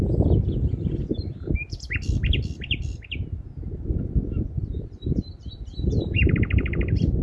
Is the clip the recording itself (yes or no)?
yes